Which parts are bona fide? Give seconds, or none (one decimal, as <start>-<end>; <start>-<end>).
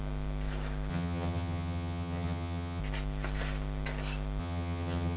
0.0-0.9; 2.8-4.4